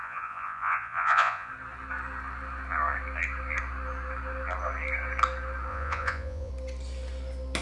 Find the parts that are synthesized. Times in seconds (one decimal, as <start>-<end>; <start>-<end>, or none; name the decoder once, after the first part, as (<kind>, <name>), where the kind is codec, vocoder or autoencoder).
0.0-1.5 (vocoder, Vocos); 5.7-6.5